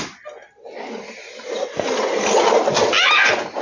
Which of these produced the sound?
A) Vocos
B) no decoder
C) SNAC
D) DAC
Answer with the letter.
B